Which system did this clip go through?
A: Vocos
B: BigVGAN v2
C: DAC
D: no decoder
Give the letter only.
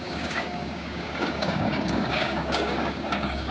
C